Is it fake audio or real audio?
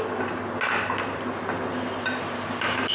real